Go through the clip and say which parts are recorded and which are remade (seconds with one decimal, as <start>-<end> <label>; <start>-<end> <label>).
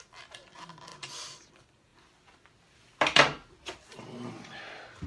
0.0-5.1 recorded